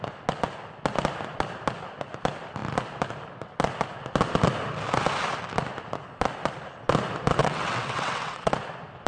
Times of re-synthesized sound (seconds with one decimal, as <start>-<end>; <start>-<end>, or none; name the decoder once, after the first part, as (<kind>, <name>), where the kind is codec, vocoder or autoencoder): 7.4-8.5 (vocoder, WaveNeXt)